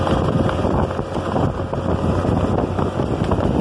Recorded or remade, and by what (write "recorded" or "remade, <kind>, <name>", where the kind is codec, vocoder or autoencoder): recorded